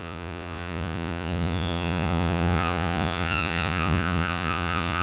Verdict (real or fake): fake